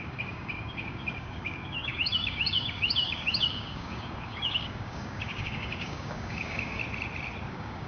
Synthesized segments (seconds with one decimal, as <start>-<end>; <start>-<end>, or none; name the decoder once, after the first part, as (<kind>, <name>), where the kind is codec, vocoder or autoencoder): 0.0-6.8 (codec, DAC); 7.5-7.9